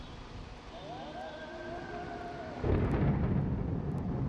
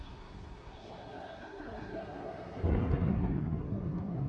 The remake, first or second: second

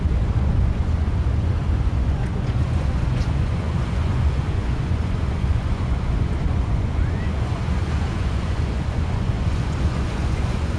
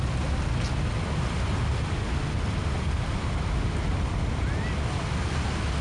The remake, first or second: first